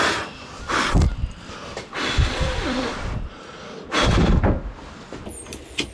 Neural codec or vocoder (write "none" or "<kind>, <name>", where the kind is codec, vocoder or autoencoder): vocoder, BigVGAN v2